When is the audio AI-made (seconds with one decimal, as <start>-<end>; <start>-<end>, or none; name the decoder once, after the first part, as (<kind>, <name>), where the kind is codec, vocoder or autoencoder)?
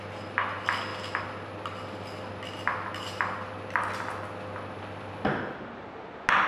none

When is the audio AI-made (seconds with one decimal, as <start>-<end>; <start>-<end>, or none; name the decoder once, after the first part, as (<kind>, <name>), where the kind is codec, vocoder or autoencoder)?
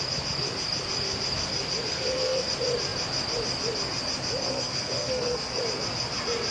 1.9-2.5 (codec, SNAC); 4.4-5.6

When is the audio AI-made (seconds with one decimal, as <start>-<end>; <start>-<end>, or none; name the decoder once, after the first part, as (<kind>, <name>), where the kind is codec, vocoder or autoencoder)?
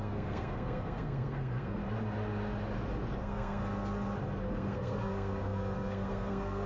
0.0-1.8 (codec, SNAC); 3.2-3.6; 4.5-6.7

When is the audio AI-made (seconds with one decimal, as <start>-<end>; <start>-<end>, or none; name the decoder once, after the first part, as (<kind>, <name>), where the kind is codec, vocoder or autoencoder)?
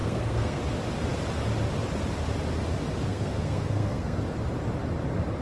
0.0-0.6 (codec, SNAC); 3.1-4.2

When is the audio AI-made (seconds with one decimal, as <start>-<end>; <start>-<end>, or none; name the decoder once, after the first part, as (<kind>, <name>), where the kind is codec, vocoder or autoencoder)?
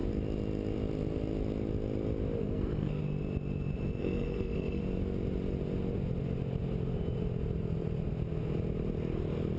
2.4-3.0 (codec, SNAC); 4.0-4.8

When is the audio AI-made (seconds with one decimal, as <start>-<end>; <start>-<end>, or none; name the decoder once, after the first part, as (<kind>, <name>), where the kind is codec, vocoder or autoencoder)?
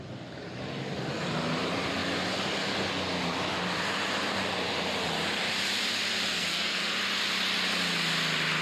6.3-6.8 (codec, SNAC)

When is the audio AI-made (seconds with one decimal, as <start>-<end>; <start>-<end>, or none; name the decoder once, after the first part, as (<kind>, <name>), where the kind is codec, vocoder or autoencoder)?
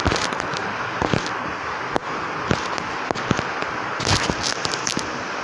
none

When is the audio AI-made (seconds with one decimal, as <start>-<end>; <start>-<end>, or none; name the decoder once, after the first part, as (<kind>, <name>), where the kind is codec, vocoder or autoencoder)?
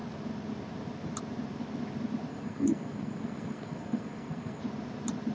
2.3-4.6 (codec, SNAC)